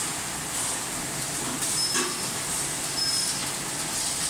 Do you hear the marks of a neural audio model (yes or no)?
no